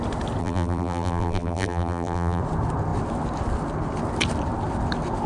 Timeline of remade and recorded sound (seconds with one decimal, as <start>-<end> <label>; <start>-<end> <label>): 0.0-0.4 recorded; 0.4-2.4 remade; 2.4-5.3 recorded